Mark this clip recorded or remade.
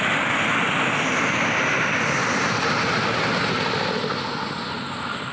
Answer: recorded